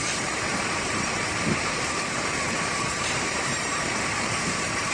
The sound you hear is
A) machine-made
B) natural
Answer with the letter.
A